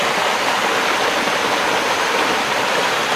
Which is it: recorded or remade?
recorded